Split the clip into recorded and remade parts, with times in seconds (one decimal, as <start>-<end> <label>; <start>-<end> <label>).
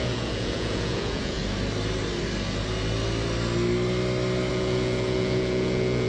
0.0-1.4 remade; 1.4-4.5 recorded; 4.5-6.1 remade